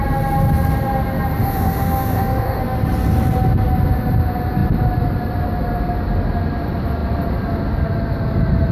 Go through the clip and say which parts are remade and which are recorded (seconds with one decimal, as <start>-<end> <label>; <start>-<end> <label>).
0.0-1.4 recorded; 1.4-2.6 remade; 2.6-8.7 recorded